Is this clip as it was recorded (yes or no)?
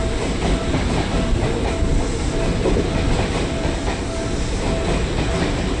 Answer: yes